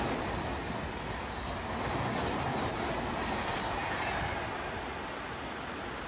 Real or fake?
real